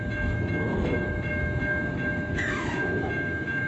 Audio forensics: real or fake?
fake